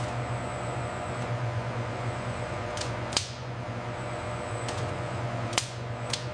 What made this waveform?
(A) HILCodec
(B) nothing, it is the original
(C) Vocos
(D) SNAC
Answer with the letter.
C